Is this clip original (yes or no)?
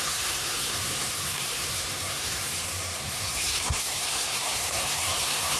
no